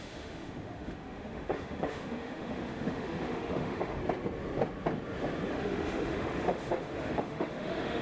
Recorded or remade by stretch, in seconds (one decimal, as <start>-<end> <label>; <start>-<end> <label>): 0.0-4.0 remade; 4.0-5.5 recorded; 5.5-8.0 remade